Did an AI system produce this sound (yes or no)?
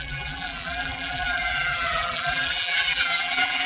yes